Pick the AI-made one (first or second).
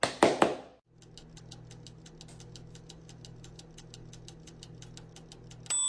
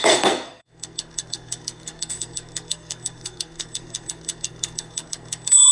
second